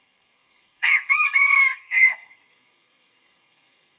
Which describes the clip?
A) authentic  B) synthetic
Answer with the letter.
B